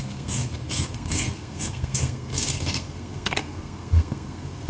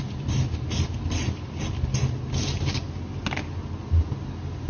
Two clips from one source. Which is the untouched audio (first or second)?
second